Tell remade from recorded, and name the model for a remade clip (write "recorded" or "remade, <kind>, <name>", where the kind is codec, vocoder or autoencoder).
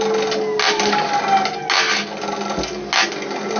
recorded